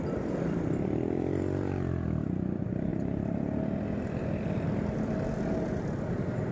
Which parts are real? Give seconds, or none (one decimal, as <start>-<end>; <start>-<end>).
2.9-6.1